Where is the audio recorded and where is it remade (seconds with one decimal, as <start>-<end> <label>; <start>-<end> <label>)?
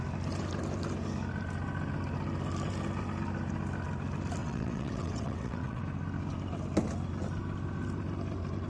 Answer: 0.0-4.4 recorded; 4.4-5.8 remade; 5.8-8.7 recorded